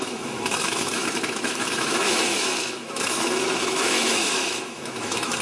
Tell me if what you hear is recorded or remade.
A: remade